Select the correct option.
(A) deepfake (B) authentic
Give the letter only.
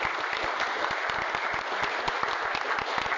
B